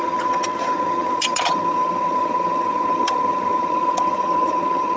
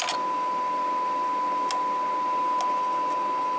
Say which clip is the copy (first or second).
first